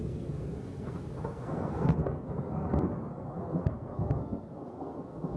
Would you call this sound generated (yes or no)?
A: yes